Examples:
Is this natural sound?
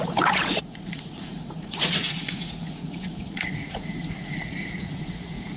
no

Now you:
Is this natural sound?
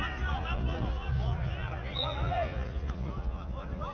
no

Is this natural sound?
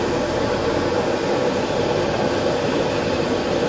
yes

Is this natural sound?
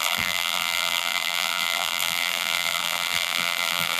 no